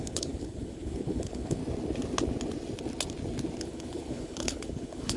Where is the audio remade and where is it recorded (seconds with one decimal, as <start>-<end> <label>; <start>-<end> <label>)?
0.0-1.6 remade; 1.6-3.6 recorded; 3.6-5.2 remade